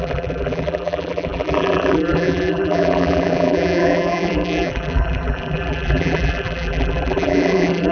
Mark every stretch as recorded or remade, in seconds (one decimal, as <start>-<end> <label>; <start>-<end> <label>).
0.0-7.9 remade